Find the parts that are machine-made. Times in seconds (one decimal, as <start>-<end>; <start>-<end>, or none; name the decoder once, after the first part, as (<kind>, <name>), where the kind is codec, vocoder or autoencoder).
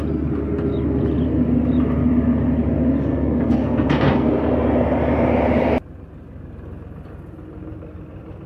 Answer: 3.1-4.3 (codec, SNAC)